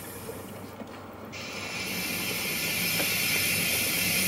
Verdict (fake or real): real